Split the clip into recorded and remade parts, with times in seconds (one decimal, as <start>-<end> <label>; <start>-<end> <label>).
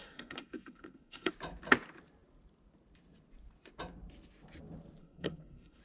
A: 0.0-1.3 remade; 1.3-5.0 recorded; 5.0-5.8 remade